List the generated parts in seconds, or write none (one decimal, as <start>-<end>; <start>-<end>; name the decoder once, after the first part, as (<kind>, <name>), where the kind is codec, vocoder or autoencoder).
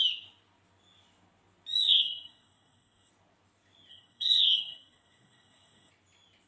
1.8-3.1 (codec, SNAC); 3.9-5.9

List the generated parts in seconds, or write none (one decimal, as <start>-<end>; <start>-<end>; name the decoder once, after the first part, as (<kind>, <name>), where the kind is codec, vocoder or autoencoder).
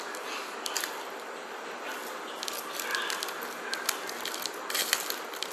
none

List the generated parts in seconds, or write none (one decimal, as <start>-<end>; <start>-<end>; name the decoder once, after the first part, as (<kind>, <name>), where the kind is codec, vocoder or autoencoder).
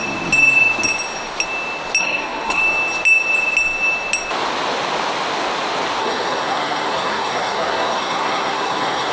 2.0-2.6 (codec, SNAC); 6.0-9.1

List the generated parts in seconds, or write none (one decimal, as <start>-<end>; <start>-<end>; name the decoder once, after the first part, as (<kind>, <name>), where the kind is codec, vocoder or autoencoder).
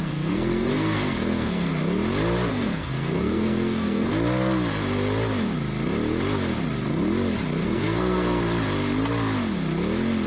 0.0-1.7 (codec, SNAC); 2.5-4.1; 7.6-8.4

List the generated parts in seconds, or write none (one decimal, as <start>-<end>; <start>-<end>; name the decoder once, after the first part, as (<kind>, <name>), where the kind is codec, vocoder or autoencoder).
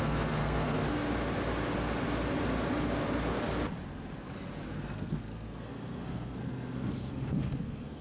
0.0-0.8 (codec, SNAC); 4.7-8.0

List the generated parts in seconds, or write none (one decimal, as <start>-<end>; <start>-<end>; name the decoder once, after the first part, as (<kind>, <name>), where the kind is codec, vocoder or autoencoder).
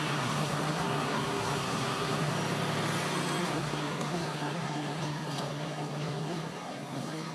0.0-2.3 (codec, SNAC); 3.4-7.3